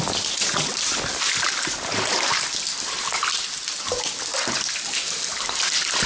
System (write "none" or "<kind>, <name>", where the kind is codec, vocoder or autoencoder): none